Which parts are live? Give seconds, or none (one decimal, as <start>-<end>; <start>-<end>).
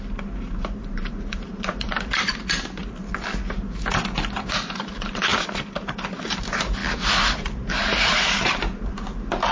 2.8-3.5; 5.3-6.2; 6.8-7.4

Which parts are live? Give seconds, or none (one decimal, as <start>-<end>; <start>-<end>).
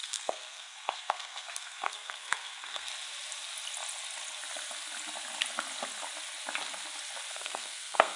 2.9-7.3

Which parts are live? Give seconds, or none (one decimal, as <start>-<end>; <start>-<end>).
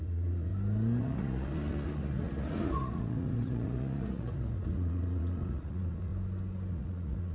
0.5-1.0; 6.1-6.7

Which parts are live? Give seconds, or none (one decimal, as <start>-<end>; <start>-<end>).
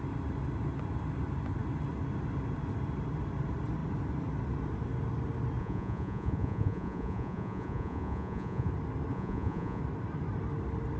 0.0-5.6; 8.7-9.1; 9.8-11.0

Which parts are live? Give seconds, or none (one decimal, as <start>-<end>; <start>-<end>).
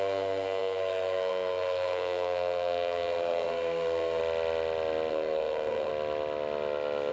4.2-5.1; 5.9-7.1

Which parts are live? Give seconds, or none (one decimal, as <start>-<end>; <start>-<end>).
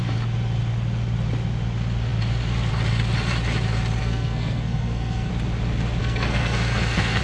0.0-4.0; 5.3-6.0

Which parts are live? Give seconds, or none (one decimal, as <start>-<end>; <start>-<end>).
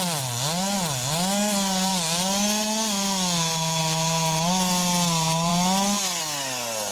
0.0-6.9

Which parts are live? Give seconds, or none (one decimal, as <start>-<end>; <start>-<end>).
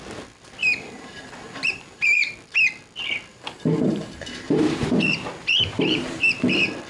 0.0-0.6; 2.3-3.3; 6.2-6.9